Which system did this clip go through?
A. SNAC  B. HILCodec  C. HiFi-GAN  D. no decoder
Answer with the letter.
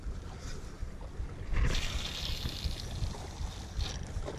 D